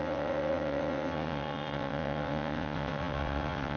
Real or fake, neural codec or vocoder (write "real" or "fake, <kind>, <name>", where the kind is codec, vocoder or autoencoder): fake, vocoder, WaveNeXt